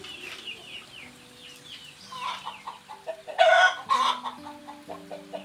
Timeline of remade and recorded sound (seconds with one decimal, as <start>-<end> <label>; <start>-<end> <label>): 0.0-5.4 recorded